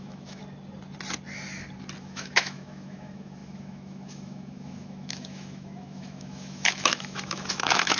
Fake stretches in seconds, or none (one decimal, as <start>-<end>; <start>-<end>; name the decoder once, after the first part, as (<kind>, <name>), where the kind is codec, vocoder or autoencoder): 0.0-0.4 (autoencoder, DAC-VAE); 2.0-8.0